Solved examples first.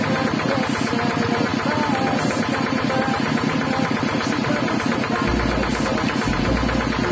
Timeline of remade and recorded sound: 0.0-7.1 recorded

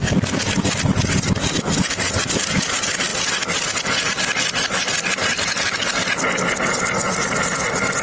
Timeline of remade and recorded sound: 0.0-8.0 recorded